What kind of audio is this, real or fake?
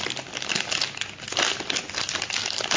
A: real